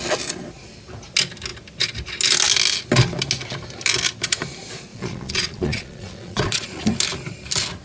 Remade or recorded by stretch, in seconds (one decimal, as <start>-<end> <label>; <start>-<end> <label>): 0.0-4.9 recorded; 4.9-6.9 remade; 6.9-7.8 recorded